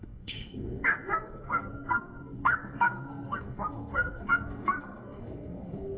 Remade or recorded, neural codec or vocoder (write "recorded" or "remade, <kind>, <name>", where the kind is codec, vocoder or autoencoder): remade, codec, SNAC